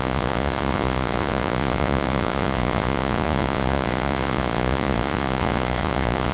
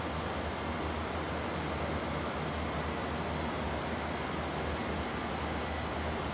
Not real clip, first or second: first